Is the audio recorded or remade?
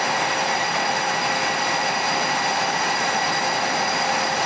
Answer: recorded